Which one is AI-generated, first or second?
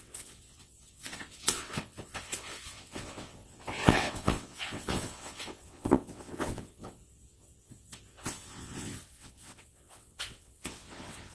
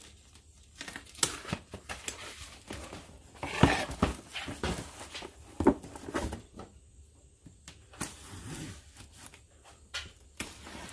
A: first